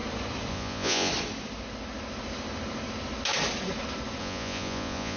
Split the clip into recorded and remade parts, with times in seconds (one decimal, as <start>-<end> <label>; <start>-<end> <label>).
0.0-0.5 recorded; 0.5-1.1 remade; 1.1-4.2 recorded; 4.2-5.2 remade

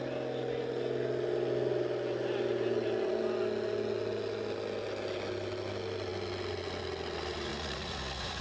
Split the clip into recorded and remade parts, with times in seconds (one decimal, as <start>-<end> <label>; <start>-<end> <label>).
0.0-7.5 recorded; 7.5-8.4 remade

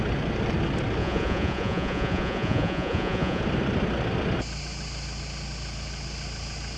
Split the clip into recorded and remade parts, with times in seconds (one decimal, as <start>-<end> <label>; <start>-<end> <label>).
0.0-1.0 recorded; 1.0-3.4 remade; 3.4-6.8 recorded

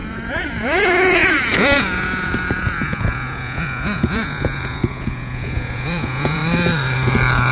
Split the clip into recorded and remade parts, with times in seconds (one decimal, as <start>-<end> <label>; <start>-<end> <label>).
0.0-6.4 remade; 6.4-7.5 recorded

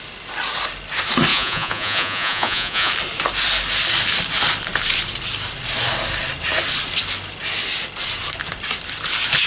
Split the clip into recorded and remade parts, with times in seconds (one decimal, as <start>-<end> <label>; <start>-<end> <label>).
0.0-1.3 recorded; 1.3-2.9 remade; 2.9-9.5 recorded

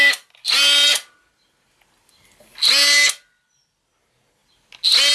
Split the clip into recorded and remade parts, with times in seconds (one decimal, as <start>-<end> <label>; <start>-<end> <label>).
0.0-5.1 recorded